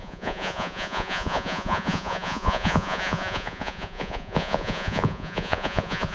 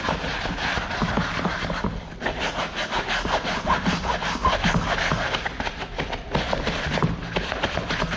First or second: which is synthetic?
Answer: first